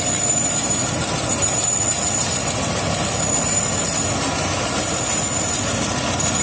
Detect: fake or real real